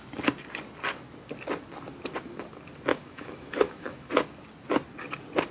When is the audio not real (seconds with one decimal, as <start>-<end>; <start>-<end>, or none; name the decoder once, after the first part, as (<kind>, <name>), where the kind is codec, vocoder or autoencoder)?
2.9-4.1 (autoencoder, DAC-VAE)